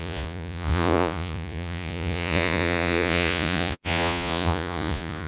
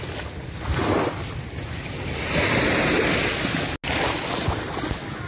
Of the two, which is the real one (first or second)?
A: second